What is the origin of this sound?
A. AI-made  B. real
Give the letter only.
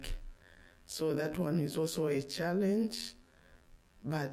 A